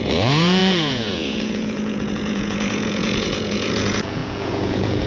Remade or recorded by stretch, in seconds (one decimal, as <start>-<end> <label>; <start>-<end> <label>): 0.0-5.1 remade